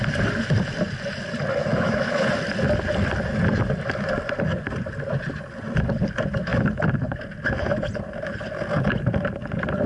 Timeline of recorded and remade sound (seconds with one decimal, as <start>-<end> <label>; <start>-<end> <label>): 0.0-1.6 recorded; 1.6-2.3 remade; 2.3-9.9 recorded